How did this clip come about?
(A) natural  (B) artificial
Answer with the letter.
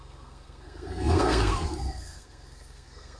B